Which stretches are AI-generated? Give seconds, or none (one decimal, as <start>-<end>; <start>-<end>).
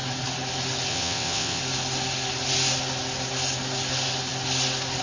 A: 0.9-1.6